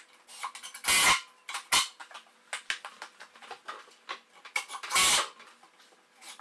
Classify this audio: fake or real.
real